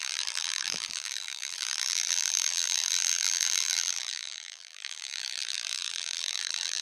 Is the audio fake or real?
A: fake